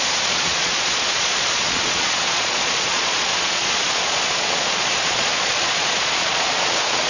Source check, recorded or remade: remade